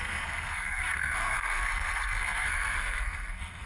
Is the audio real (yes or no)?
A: no